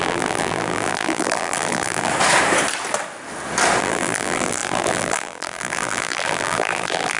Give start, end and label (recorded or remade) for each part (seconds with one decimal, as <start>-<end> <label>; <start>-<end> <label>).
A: 0.0-2.1 remade; 2.1-3.8 recorded; 3.8-7.2 remade